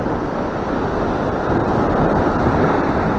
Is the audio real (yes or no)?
yes